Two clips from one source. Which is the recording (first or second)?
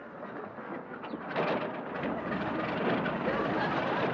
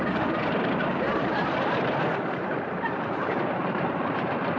first